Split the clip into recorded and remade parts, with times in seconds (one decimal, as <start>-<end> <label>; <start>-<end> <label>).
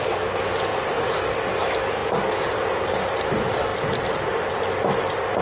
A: 0.0-5.4 recorded